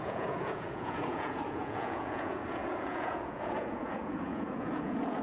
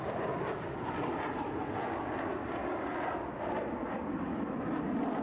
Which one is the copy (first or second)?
first